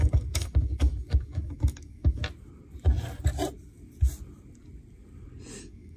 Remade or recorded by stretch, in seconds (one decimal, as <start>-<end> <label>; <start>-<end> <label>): 0.0-2.2 remade; 2.2-5.6 recorded; 5.6-6.0 remade